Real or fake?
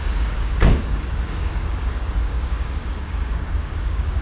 fake